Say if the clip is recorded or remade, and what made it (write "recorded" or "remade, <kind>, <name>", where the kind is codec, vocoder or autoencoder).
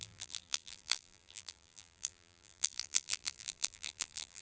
remade, vocoder, BigVGAN v2